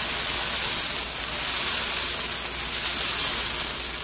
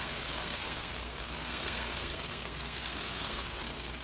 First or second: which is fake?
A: second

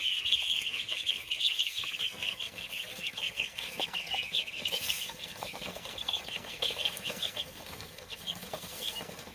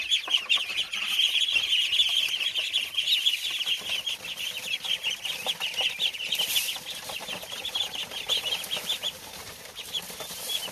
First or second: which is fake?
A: first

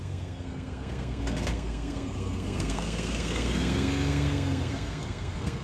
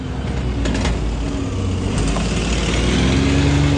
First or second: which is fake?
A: first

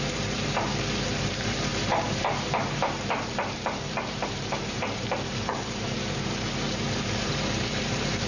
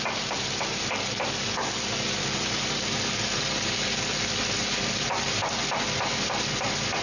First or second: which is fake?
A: first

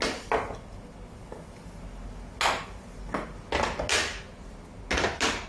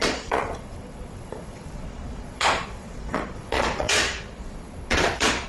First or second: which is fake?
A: second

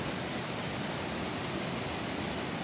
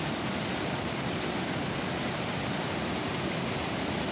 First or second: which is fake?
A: second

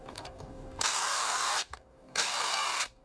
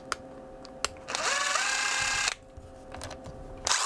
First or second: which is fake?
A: first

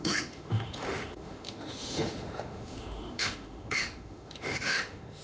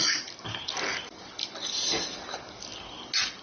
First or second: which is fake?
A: first